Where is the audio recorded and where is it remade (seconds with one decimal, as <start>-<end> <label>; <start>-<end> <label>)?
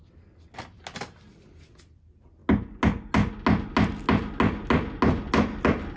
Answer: 0.0-6.0 recorded